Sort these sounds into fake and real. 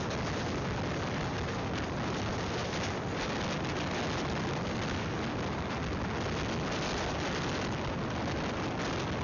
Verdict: real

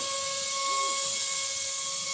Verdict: real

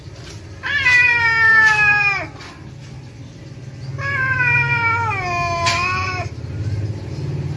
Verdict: real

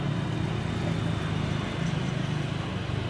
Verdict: real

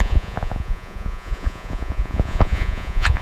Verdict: fake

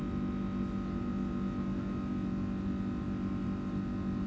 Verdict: real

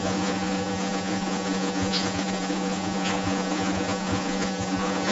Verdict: fake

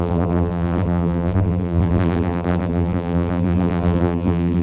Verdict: fake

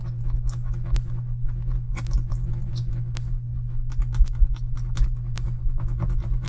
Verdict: real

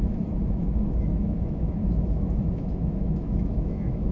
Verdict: fake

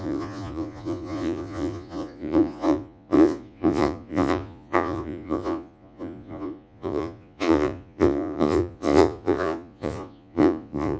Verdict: fake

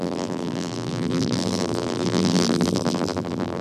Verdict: fake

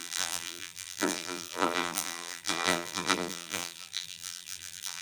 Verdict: fake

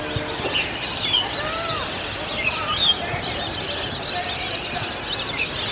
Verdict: real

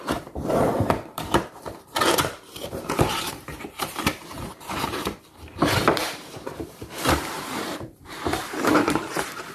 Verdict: fake